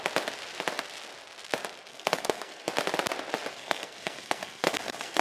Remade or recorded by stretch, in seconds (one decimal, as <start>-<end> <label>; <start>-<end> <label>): 0.0-1.9 recorded; 1.9-2.7 remade; 2.7-3.5 recorded; 3.5-5.2 remade